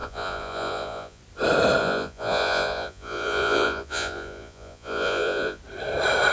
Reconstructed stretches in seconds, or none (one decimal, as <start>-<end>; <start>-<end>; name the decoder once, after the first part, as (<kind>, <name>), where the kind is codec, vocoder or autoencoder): 0.0-1.2 (vocoder, Vocos); 1.8-5.6